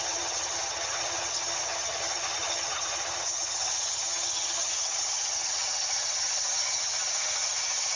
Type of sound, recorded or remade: remade